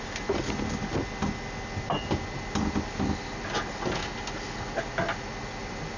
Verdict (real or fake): real